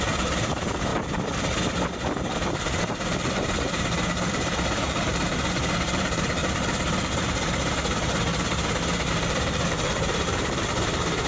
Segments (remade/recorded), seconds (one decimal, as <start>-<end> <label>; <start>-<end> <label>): 0.0-0.9 remade; 0.9-2.8 recorded; 2.8-6.4 remade; 6.4-9.1 recorded; 9.1-11.3 remade